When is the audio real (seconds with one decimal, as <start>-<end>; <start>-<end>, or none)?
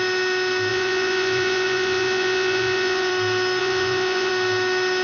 0.0-0.7; 3.1-3.6; 4.3-5.0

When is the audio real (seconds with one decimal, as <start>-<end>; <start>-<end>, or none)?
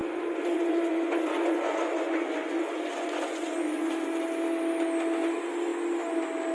3.9-6.5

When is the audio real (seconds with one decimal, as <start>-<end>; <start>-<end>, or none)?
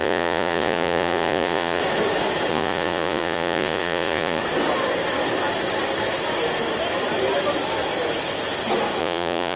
1.8-2.5; 4.4-9.0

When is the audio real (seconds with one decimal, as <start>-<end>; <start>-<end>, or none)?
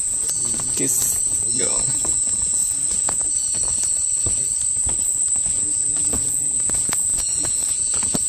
2.6-5.3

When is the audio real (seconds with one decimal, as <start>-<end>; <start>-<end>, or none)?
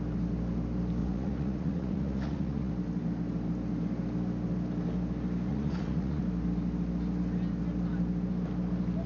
0.0-1.0; 2.7-5.5; 6.2-9.1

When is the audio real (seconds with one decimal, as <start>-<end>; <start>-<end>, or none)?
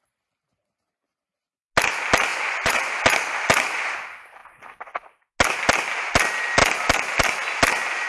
0.0-2.3; 2.9-8.1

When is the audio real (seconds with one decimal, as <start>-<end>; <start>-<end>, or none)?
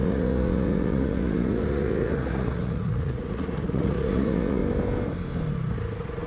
4.6-6.3